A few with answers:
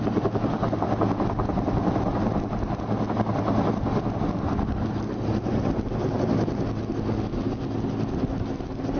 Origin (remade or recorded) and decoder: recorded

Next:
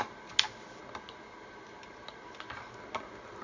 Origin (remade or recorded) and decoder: recorded